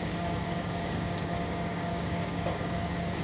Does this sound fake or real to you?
fake